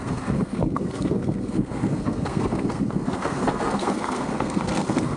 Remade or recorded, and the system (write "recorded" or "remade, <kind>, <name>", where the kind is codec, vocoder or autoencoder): remade, codec, SNAC